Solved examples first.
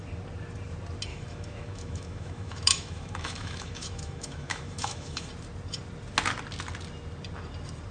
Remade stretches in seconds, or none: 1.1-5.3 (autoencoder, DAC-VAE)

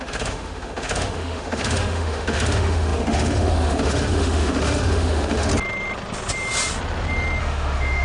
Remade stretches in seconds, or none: 0.0-5.5 (autoencoder, DAC-VAE); 7.4-8.0